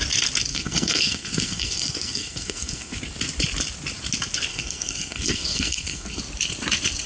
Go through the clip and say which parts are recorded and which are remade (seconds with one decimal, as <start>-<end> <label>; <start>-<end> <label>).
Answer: 0.0-0.5 recorded; 0.5-3.0 remade; 3.0-4.5 recorded; 4.5-6.2 remade; 6.2-7.1 recorded